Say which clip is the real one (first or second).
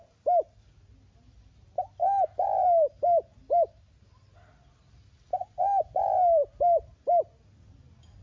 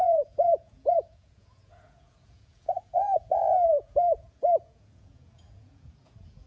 first